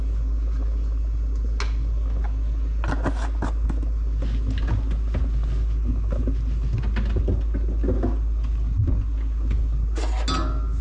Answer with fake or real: real